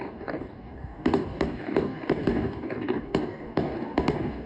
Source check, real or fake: fake